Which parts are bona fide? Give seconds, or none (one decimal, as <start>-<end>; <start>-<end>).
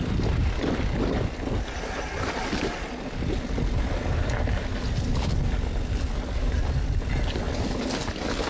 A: 0.0-8.5